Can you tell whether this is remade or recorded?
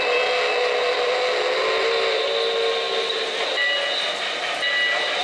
recorded